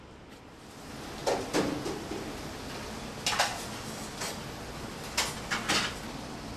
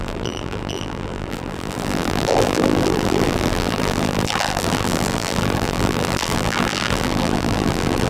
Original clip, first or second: first